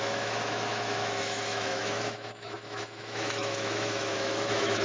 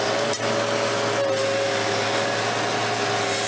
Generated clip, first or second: first